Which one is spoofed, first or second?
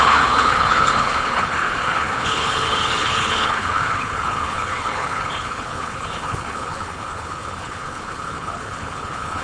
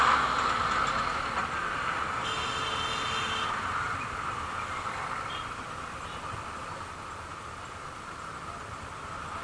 first